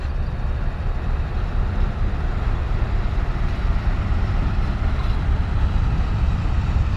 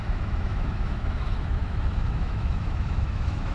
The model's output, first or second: second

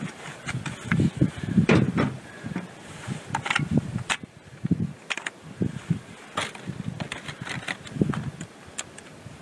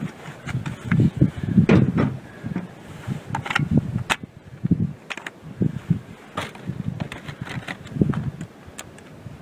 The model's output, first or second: first